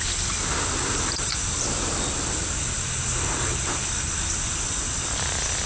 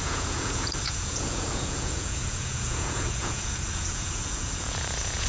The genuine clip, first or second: first